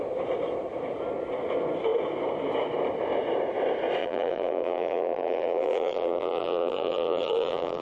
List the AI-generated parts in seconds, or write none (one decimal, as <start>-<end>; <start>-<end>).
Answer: 4.0-7.8